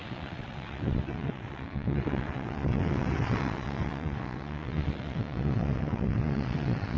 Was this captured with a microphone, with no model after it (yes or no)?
no